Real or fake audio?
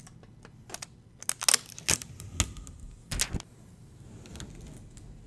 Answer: real